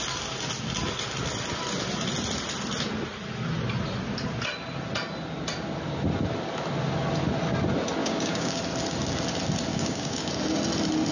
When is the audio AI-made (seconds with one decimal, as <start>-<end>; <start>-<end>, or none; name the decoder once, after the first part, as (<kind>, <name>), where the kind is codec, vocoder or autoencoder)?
8.0-8.6 (codec, DAC); 9.7-10.3